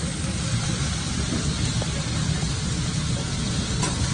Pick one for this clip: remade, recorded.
recorded